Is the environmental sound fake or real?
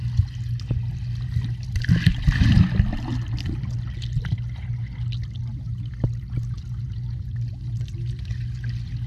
real